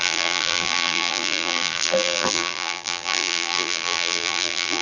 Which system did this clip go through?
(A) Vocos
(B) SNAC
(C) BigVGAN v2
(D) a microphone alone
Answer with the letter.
C